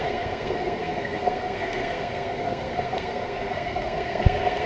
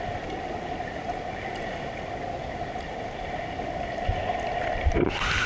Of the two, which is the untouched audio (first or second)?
second